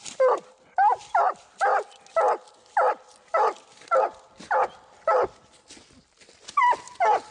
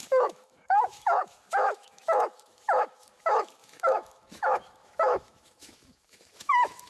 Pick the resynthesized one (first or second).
second